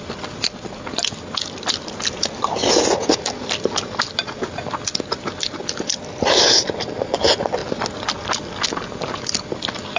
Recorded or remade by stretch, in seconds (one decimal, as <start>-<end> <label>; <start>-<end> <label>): 0.0-10.0 recorded